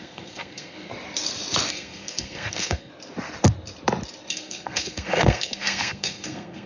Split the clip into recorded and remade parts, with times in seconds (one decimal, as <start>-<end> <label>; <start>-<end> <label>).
0.0-0.9 remade; 0.9-1.7 recorded; 1.7-2.9 remade; 2.9-4.3 recorded; 4.3-6.7 remade